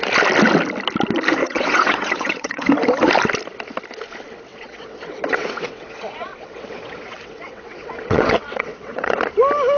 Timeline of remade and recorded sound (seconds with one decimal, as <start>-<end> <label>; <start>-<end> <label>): 0.0-1.4 recorded; 1.4-2.7 remade; 2.7-4.5 recorded; 4.5-9.2 remade; 9.2-9.8 recorded